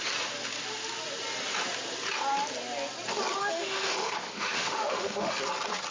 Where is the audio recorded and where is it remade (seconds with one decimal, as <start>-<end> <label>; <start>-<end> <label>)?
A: 0.0-3.4 recorded; 3.4-5.3 remade; 5.3-5.9 recorded

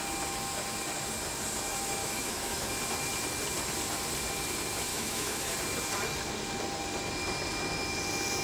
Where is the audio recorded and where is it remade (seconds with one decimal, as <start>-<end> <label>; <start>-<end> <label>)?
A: 0.0-2.0 recorded; 2.0-2.7 remade; 2.7-4.9 recorded; 4.9-5.5 remade; 5.5-8.4 recorded

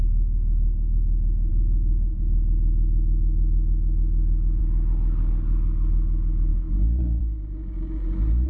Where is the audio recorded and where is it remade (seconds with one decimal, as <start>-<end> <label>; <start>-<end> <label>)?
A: 0.0-0.9 remade; 0.9-1.5 recorded; 1.5-4.6 remade; 4.6-6.5 recorded; 6.5-7.2 remade; 7.2-8.5 recorded

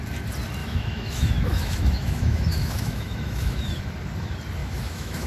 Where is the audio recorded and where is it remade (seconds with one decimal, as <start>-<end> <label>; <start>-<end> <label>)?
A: 0.0-0.6 recorded; 0.6-3.8 remade; 3.8-4.6 recorded; 4.6-5.3 remade